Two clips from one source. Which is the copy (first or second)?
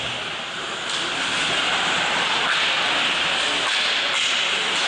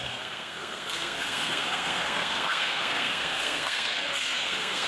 second